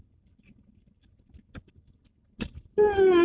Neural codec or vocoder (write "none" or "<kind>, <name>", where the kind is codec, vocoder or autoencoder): none